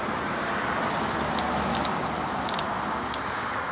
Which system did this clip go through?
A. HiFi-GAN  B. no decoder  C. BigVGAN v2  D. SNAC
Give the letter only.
B